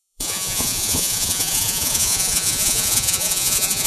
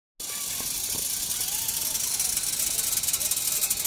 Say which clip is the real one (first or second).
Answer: second